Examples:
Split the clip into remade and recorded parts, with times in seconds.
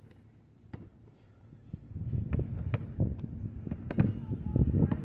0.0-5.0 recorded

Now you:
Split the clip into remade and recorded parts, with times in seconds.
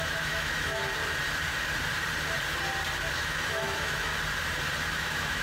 0.0-0.8 remade; 0.8-3.1 recorded; 3.1-4.1 remade; 4.1-4.9 recorded; 4.9-5.4 remade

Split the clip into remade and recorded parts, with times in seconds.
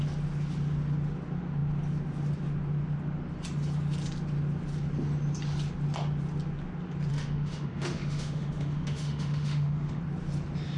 0.0-7.1 recorded; 7.1-10.0 remade; 10.0-10.8 recorded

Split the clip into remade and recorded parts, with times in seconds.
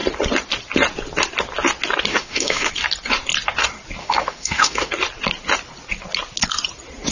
0.0-2.1 recorded; 2.1-2.7 remade; 2.7-4.0 recorded; 4.0-4.9 remade; 4.9-7.1 recorded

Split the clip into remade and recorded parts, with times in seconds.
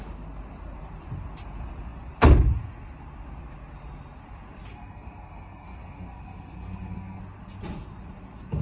0.0-4.7 recorded; 4.7-7.2 remade; 7.2-8.6 recorded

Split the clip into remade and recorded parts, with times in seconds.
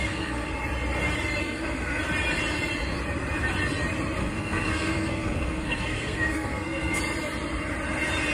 0.0-0.5 remade; 0.5-1.4 recorded; 1.4-2.0 remade; 2.0-4.2 recorded; 4.2-7.0 remade; 7.0-8.3 recorded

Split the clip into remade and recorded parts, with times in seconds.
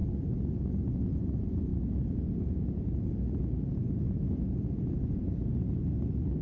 0.0-1.2 recorded; 1.2-5.5 remade; 5.5-6.4 recorded